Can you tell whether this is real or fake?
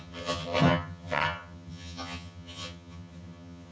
fake